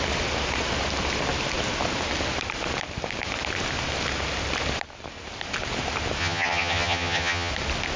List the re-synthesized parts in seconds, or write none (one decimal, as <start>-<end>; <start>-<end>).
6.2-7.5